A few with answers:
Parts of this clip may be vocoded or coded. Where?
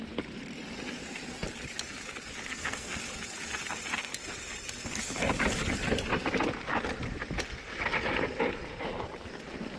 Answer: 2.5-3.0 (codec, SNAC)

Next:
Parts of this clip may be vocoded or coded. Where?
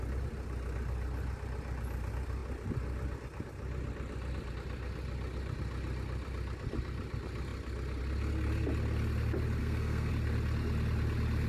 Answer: 9.6-10.1 (codec, SNAC)